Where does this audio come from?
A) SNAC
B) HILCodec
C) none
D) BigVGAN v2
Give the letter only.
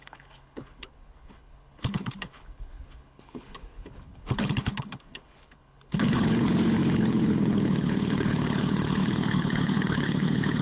B